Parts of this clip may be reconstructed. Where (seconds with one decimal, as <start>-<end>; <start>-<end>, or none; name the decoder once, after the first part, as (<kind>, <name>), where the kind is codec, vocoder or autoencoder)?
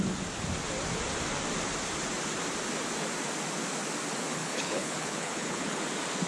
4.3-5.8 (codec, HILCodec)